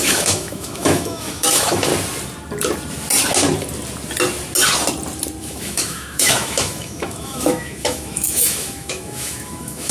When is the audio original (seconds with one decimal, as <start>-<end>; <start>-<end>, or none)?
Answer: 1.9-5.4